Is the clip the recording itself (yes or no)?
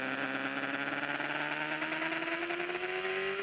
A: yes